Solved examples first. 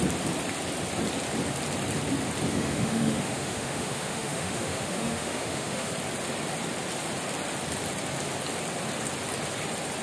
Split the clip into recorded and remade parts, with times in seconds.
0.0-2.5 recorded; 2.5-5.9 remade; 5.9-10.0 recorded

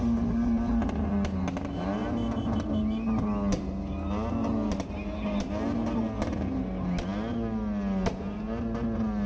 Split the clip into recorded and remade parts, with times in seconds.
0.0-9.3 recorded

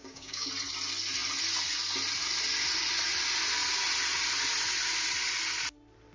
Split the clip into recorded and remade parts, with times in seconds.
0.0-0.5 remade; 0.5-6.1 recorded

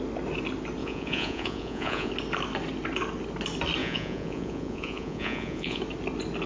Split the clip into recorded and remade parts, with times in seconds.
0.0-0.8 recorded; 0.8-2.1 remade; 2.1-3.8 recorded; 3.8-5.8 remade; 5.8-6.5 recorded